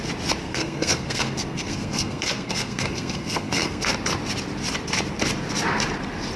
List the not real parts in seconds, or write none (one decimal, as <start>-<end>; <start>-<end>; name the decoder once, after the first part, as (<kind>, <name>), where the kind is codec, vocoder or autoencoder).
0.4-3.9 (codec, SNAC)